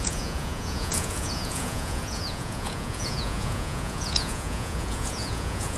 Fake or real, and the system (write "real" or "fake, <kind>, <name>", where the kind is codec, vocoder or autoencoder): fake, vocoder, Vocos